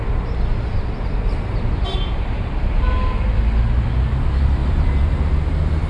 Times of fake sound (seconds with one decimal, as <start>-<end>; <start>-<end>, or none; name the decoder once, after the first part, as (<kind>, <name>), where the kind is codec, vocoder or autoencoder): 0.5-2.5 (vocoder, BigVGAN v2); 4.6-5.3